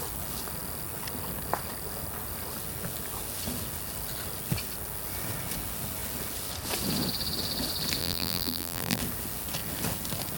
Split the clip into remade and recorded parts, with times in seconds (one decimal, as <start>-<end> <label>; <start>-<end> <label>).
0.0-8.0 recorded; 8.0-9.0 remade; 9.0-10.4 recorded